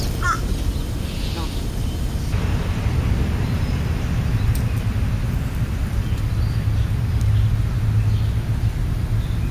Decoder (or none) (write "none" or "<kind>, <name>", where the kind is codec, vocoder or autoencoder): none